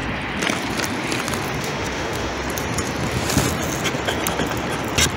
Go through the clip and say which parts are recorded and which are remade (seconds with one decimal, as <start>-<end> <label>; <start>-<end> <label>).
0.0-1.6 recorded; 1.6-2.3 remade; 2.3-5.2 recorded